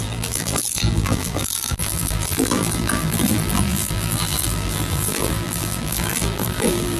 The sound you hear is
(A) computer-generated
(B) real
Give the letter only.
A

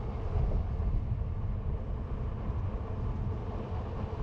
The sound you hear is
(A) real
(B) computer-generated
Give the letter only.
A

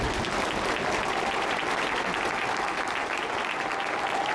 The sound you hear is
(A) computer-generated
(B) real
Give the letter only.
B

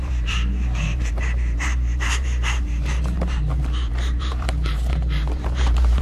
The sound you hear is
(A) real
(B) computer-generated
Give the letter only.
B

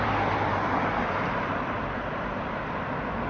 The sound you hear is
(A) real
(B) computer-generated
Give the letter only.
A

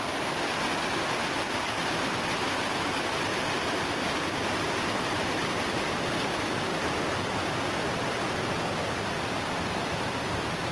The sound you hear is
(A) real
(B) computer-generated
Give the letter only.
B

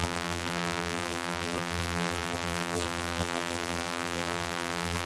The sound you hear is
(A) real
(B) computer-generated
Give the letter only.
B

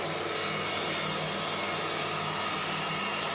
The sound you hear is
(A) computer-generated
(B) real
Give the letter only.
B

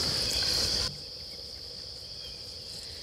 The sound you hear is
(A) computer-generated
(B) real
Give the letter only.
B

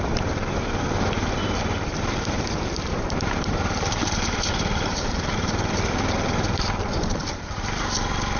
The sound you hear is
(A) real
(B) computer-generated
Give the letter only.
B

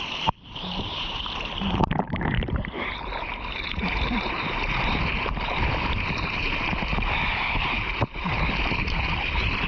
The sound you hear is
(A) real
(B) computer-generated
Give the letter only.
B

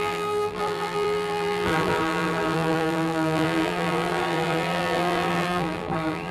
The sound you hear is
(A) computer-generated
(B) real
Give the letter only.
A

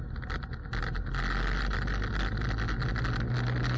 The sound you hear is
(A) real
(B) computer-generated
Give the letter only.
A